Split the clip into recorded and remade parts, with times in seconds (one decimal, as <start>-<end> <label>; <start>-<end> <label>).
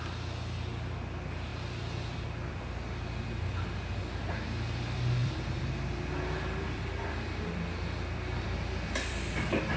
0.0-1.5 recorded; 1.5-3.7 remade; 3.7-5.2 recorded; 5.2-9.3 remade; 9.3-9.8 recorded